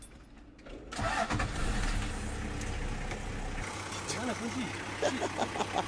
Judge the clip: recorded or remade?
recorded